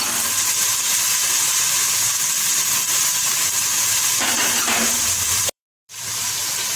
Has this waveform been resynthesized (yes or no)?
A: yes